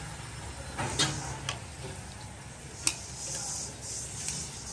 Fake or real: real